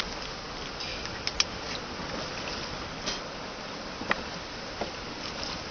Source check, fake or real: real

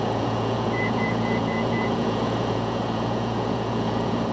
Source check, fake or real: fake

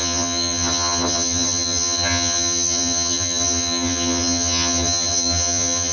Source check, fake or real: fake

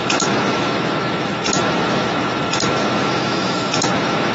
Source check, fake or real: fake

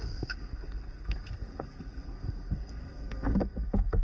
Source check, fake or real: fake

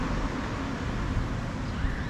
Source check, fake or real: real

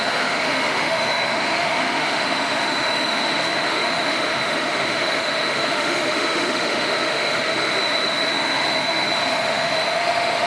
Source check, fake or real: fake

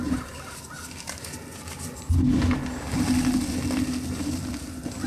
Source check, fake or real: real